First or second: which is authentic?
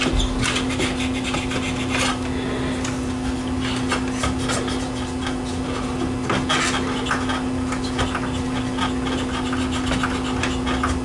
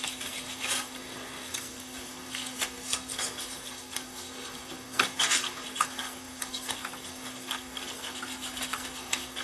first